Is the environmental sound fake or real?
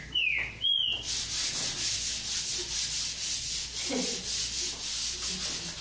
real